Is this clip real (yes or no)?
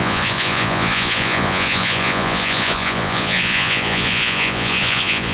no